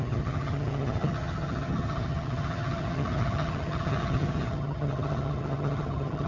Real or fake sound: fake